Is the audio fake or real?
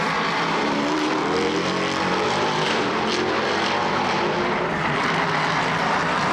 fake